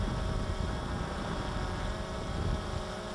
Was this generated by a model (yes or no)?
yes